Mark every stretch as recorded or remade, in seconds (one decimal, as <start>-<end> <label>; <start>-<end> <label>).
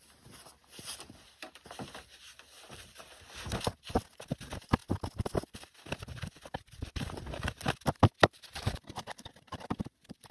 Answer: 0.0-10.3 recorded